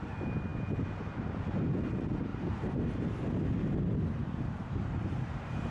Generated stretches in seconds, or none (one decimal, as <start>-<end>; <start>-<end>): 2.3-3.0; 4.2-5.7